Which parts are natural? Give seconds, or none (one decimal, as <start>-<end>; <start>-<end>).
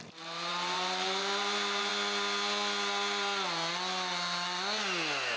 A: 1.9-5.4